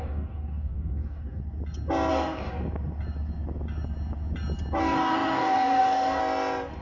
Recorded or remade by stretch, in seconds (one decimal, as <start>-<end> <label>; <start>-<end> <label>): 0.0-1.4 remade; 1.4-2.1 recorded; 2.1-2.5 remade; 2.5-4.8 recorded; 4.8-6.2 remade; 6.2-6.8 recorded